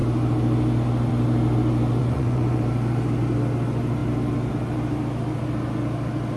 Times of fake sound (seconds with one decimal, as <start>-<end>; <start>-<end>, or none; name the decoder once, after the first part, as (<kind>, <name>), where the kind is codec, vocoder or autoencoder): 2.0-2.6 (vocoder, Vocos)